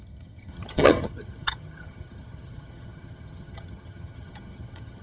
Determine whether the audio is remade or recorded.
remade